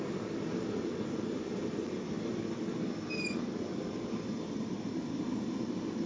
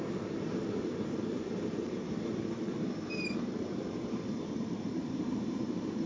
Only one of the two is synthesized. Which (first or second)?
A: second